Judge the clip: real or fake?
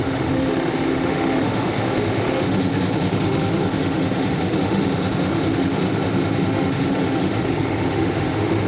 fake